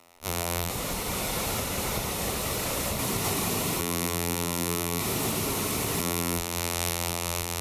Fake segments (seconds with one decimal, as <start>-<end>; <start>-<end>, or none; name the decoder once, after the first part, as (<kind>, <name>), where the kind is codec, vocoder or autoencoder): 0.0-0.7 (vocoder, BigVGAN v2); 3.8-5.0; 6.0-7.6